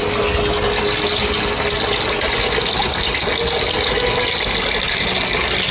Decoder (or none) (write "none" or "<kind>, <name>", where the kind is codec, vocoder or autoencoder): none